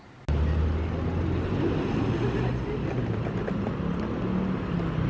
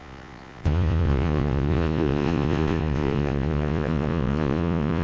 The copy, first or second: second